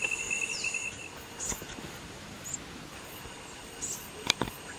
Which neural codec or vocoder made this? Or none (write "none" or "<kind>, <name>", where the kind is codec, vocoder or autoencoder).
none